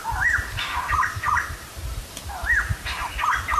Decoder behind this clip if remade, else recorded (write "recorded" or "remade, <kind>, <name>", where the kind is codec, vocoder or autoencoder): recorded